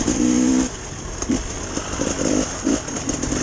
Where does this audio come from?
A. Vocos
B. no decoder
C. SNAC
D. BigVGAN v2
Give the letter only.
B